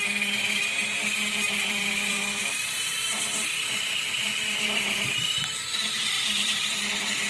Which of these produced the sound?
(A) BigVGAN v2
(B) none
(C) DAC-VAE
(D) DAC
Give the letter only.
A